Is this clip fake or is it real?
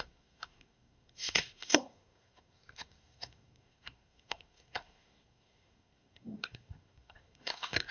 fake